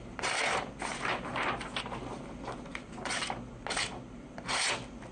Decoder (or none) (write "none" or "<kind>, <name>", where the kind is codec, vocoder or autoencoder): none